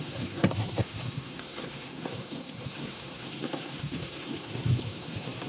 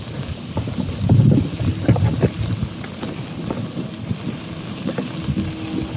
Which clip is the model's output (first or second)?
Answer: first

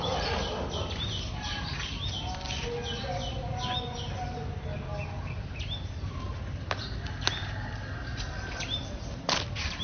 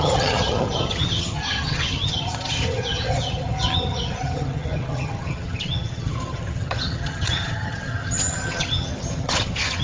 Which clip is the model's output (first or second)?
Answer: second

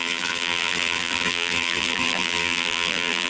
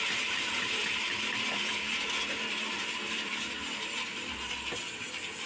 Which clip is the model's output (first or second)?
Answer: first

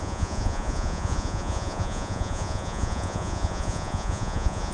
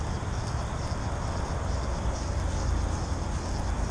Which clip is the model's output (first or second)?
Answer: first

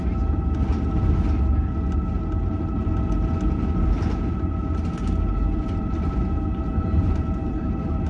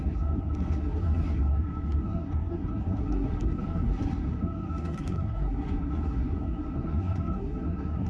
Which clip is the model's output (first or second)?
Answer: second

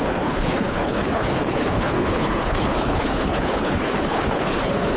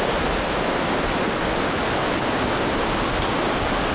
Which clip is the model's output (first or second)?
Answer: first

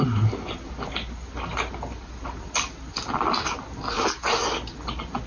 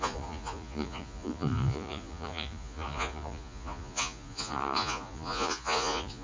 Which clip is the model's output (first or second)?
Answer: second